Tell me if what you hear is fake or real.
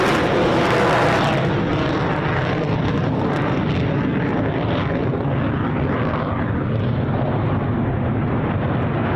real